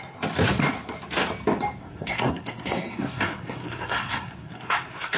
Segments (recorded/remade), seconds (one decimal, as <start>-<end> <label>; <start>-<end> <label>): 0.0-1.8 recorded; 1.8-5.2 remade